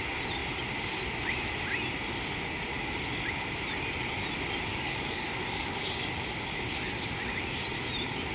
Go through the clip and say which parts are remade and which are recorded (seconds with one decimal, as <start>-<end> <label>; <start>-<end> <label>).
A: 0.0-4.7 recorded; 4.7-6.1 remade; 6.1-8.3 recorded